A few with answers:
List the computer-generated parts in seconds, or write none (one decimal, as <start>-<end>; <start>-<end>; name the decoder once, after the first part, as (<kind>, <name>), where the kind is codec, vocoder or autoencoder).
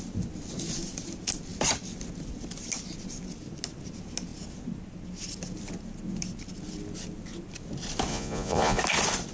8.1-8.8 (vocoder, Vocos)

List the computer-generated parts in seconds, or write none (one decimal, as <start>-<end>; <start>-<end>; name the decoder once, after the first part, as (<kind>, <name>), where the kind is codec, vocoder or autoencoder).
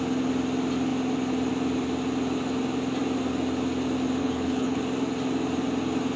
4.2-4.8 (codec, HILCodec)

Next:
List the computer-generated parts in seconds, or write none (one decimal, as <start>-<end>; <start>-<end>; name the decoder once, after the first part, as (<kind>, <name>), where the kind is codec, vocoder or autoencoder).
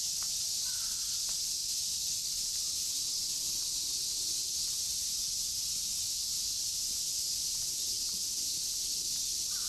none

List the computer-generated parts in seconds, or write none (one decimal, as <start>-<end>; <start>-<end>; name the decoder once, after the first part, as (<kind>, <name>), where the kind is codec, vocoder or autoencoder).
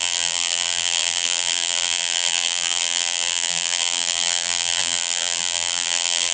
0.0-6.3 (vocoder, BigVGAN v2)